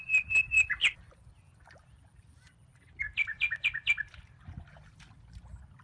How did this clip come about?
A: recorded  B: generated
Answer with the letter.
A